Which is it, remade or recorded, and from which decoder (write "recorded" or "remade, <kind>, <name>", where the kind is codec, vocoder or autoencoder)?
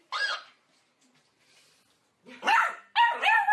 recorded